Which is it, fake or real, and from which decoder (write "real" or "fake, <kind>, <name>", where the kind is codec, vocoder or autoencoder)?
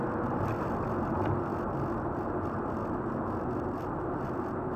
real